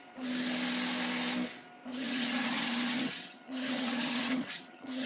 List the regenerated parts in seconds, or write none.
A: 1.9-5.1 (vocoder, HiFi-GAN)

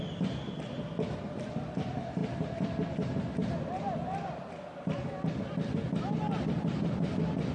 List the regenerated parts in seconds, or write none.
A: none

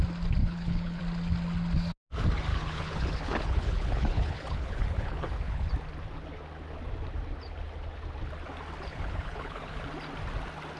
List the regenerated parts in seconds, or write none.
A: 0.4-1.0 (codec, HILCodec); 2.5-5.7; 8.9-9.8